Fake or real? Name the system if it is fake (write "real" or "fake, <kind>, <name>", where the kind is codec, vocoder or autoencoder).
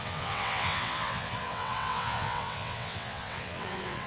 fake, vocoder, WaveNeXt